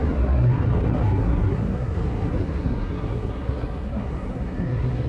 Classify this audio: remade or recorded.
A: remade